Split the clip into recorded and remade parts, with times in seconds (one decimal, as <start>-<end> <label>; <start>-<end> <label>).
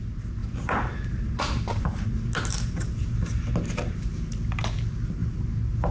0.0-0.4 recorded; 0.4-3.9 remade; 3.9-5.9 recorded